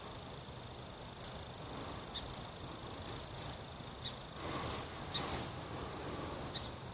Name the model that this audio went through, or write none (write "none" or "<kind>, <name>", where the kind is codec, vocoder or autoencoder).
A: none